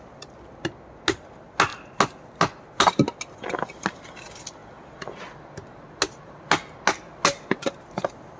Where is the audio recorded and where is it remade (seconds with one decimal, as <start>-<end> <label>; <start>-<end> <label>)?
0.0-8.4 recorded